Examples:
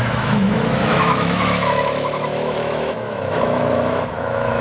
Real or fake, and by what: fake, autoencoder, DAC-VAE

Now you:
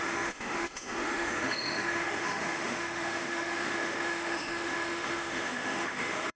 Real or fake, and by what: fake, autoencoder, DAC-VAE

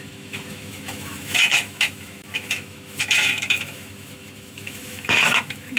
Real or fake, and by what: fake, autoencoder, DAC-VAE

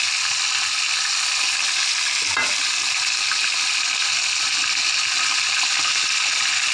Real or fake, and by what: real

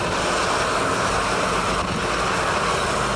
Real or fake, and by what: real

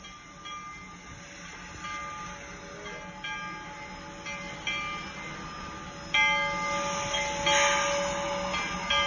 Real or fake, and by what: real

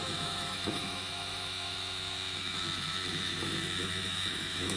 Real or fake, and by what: fake, autoencoder, DAC-VAE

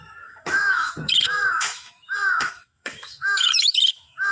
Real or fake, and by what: fake, autoencoder, DAC-VAE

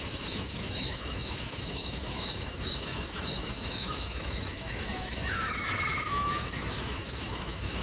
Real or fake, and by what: fake, autoencoder, DAC-VAE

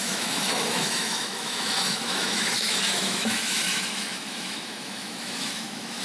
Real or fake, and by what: fake, autoencoder, DAC-VAE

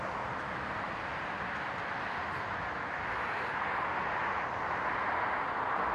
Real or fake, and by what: real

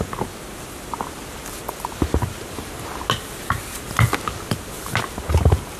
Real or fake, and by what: real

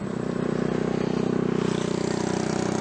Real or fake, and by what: real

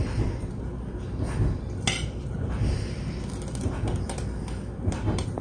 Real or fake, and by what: real